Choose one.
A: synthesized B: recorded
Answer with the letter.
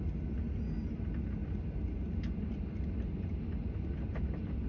B